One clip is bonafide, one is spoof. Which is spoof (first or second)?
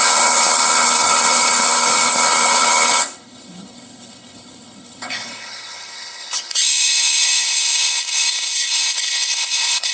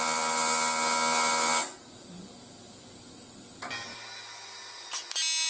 first